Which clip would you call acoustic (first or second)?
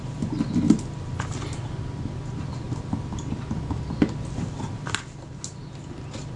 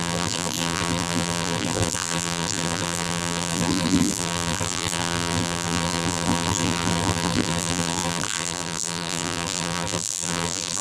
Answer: first